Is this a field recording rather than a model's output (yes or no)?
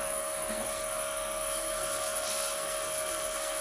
no